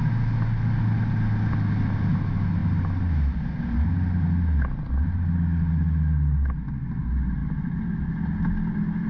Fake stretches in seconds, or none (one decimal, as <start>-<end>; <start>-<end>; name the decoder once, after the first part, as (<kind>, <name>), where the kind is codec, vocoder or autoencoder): none